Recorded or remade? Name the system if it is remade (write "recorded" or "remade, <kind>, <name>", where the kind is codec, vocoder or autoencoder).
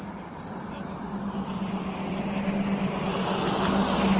recorded